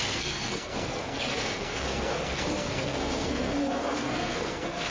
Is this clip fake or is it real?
fake